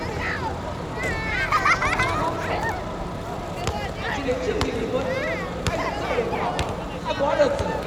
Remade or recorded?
recorded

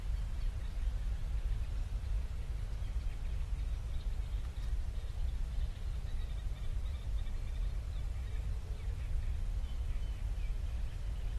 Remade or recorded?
recorded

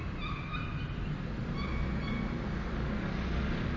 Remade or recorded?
recorded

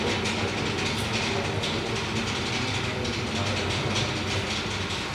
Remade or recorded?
recorded